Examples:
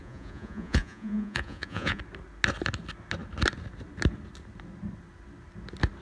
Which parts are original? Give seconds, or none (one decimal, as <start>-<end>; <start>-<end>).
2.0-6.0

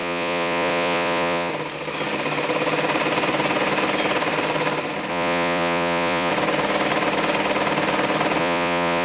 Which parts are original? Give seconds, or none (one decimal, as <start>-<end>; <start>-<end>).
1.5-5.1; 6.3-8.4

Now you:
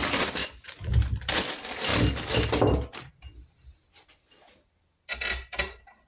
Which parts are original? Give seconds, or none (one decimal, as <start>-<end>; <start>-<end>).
0.0-0.4; 0.9-6.1